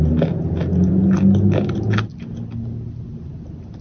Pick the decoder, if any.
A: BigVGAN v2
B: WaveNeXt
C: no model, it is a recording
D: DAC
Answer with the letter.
C